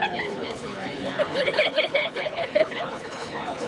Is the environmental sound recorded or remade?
remade